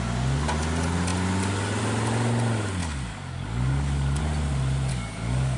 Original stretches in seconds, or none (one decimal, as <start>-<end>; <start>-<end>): 0.0-2.8; 4.2-4.9